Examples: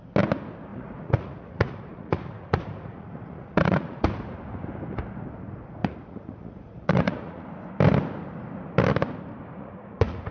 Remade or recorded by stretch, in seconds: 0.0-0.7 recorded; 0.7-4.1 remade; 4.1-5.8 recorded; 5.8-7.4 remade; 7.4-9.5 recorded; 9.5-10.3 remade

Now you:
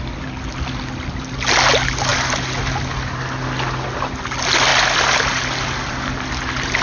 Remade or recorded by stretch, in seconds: 0.0-6.8 recorded

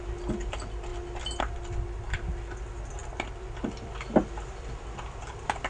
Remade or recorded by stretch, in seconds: 0.0-5.7 recorded

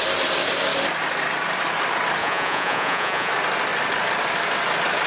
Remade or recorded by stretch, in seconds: 0.0-2.2 recorded; 2.2-3.3 remade; 3.3-5.1 recorded

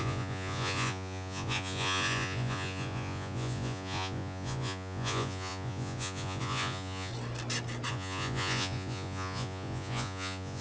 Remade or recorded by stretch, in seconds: 0.0-7.1 remade; 7.1-7.9 recorded; 7.9-10.6 remade

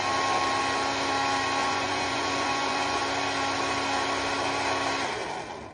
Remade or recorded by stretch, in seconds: 0.0-1.6 recorded; 1.6-3.0 remade; 3.0-5.7 recorded

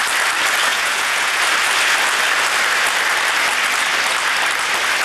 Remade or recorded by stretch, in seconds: 0.0-0.7 recorded; 0.7-1.4 remade; 1.4-5.0 recorded

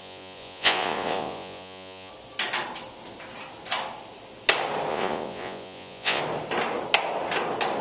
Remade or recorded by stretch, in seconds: 0.0-2.1 remade; 2.1-4.9 recorded; 4.9-6.2 remade; 6.2-7.8 recorded